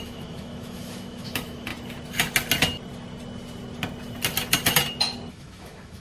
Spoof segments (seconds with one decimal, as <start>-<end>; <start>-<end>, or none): 0.0-1.7; 5.3-6.0